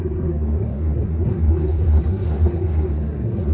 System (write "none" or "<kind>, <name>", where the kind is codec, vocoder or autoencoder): codec, SNAC